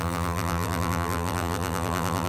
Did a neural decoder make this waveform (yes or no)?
yes